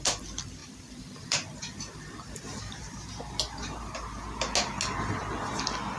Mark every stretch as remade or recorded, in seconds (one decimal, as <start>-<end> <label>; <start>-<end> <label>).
0.0-0.6 recorded; 0.6-4.2 remade; 4.2-6.0 recorded